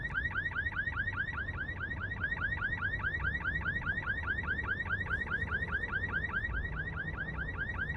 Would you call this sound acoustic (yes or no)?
no